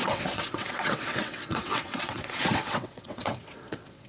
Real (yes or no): no